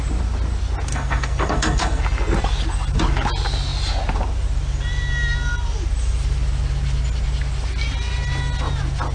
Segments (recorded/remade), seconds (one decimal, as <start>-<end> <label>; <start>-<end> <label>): 0.0-0.9 recorded; 0.9-2.0 remade; 2.0-9.1 recorded